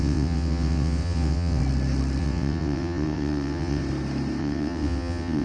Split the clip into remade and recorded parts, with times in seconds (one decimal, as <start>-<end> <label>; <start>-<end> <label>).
0.0-1.6 remade; 1.6-2.2 recorded; 2.2-3.8 remade; 3.8-4.4 recorded; 4.4-5.4 remade